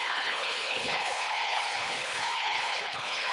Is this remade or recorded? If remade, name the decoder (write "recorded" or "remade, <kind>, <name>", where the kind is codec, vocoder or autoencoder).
remade, codec, HILCodec